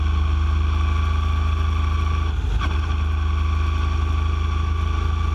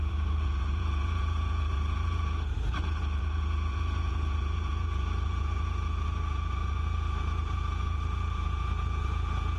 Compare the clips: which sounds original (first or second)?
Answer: first